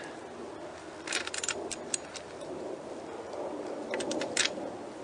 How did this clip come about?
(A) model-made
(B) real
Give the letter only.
B